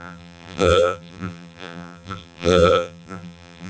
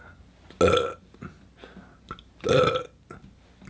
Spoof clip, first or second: first